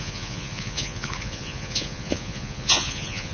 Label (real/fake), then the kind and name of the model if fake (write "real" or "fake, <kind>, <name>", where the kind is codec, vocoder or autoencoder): fake, vocoder, Vocos